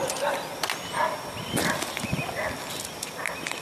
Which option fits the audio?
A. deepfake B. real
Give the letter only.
B